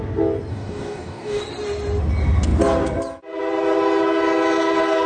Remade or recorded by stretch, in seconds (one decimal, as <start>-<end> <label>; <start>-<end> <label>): 0.0-0.5 recorded; 0.5-1.4 remade; 1.4-5.1 recorded